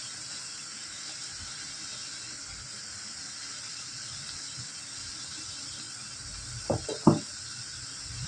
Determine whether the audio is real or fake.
real